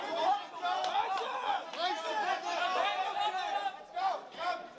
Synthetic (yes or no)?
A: no